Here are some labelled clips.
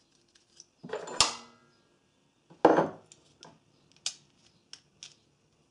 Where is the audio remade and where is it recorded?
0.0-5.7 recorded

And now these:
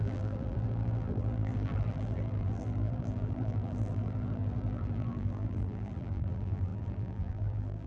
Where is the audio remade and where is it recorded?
0.0-7.9 remade

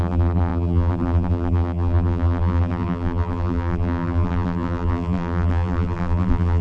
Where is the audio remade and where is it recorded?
0.0-6.6 remade

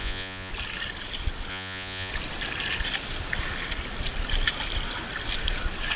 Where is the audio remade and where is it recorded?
0.0-0.5 remade; 0.5-1.5 recorded; 1.5-2.1 remade; 2.1-6.0 recorded

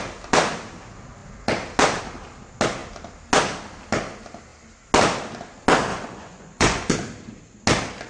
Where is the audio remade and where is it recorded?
0.0-5.9 recorded; 5.9-6.9 remade; 6.9-8.1 recorded

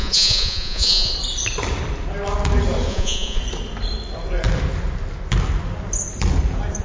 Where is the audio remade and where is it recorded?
0.0-1.1 remade; 1.1-2.9 recorded; 2.9-3.4 remade; 3.4-6.8 recorded

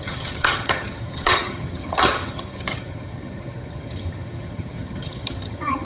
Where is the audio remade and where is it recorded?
0.0-5.8 remade